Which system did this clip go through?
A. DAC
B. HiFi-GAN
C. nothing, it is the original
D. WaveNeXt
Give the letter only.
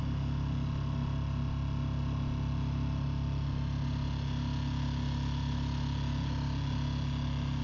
C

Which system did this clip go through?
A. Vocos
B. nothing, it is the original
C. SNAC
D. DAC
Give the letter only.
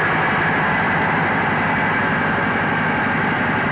B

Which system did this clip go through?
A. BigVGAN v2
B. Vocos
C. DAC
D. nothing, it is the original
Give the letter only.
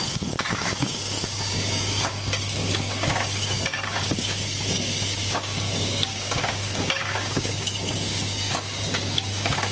C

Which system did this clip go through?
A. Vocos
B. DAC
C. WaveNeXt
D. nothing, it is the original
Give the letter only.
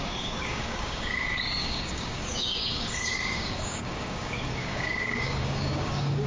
B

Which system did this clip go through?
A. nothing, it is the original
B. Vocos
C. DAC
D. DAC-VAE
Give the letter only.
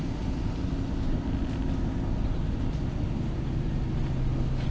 A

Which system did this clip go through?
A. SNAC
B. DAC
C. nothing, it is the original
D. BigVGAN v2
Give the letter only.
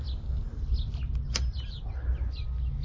C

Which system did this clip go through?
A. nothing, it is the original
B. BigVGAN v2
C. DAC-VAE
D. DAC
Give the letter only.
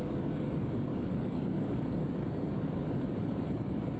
D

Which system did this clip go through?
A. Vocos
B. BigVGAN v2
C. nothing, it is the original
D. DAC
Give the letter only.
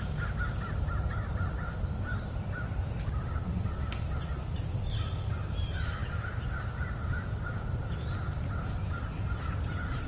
C